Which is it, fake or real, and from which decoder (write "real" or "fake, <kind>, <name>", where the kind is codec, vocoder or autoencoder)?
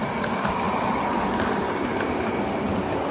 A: real